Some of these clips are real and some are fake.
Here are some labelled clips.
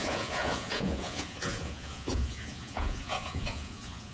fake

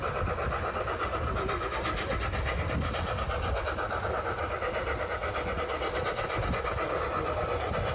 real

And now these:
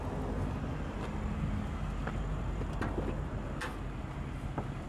real